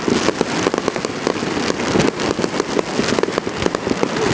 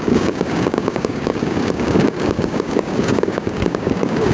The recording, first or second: first